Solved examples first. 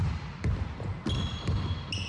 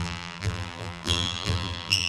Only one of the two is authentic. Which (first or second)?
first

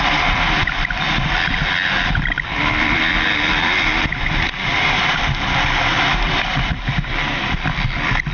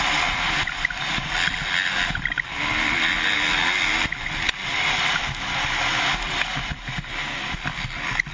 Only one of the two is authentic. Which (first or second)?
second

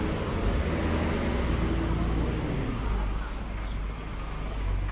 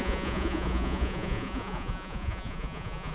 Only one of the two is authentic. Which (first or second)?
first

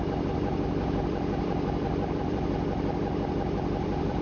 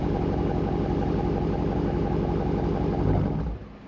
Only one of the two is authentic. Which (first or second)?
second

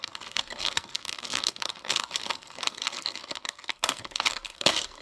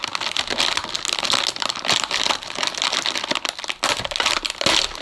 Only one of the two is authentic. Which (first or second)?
second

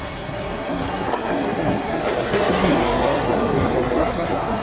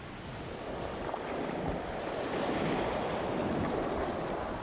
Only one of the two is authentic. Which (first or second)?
second